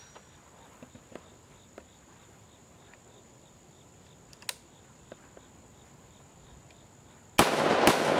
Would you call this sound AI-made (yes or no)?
no